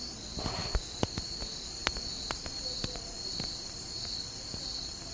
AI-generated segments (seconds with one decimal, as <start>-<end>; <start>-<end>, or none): 0.6-1.4; 1.8-3.8

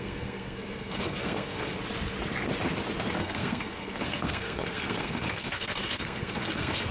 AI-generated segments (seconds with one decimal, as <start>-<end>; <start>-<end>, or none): 0.0-1.8; 3.2-6.9

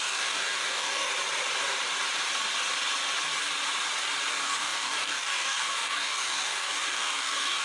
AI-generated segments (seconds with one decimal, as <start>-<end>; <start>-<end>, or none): 0.0-1.1; 4.3-7.6

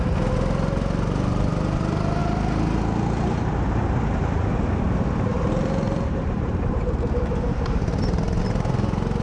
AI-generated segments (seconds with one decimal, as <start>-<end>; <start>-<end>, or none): 5.3-8.4

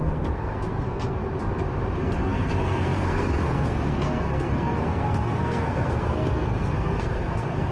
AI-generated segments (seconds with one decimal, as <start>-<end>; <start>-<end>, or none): 0.0-1.2; 2.0-7.7